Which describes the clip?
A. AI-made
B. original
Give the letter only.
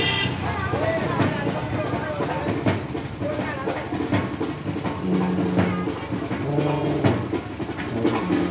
B